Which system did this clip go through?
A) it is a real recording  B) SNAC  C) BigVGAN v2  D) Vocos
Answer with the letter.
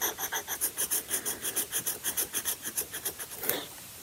C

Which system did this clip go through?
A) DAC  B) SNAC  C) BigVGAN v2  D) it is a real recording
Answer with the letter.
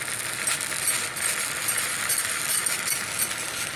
D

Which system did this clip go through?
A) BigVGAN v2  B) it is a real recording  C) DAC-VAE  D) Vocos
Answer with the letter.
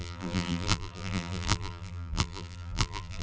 A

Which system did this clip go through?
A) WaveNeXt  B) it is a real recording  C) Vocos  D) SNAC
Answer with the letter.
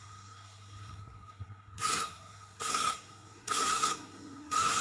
D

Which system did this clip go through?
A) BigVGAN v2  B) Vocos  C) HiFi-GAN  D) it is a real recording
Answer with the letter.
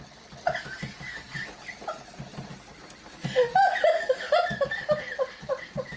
D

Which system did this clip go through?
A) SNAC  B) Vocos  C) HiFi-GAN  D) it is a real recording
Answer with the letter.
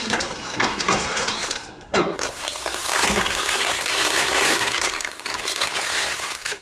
A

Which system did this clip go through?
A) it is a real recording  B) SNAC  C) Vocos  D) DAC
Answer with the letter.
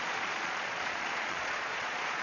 C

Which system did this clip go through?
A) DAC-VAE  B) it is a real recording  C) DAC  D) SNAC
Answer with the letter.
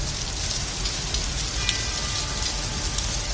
B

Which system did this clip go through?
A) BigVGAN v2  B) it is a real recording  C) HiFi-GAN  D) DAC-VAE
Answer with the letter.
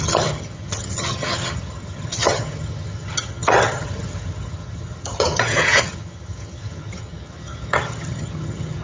C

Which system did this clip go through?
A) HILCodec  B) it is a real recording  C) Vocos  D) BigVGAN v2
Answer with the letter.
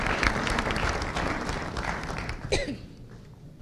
D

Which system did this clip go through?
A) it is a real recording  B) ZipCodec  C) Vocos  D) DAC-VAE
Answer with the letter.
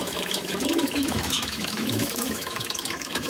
D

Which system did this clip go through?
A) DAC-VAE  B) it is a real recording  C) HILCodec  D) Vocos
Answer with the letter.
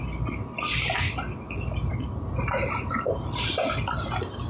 B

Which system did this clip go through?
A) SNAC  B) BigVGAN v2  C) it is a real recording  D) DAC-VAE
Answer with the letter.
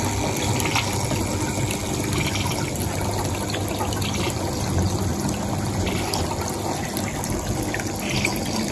C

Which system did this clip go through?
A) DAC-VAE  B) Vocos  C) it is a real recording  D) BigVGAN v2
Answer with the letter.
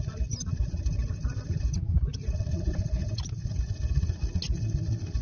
C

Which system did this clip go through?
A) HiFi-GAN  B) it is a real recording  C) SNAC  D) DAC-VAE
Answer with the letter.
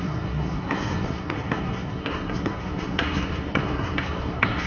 C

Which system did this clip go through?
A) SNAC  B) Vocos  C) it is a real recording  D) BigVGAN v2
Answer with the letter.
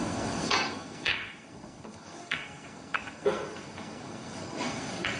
A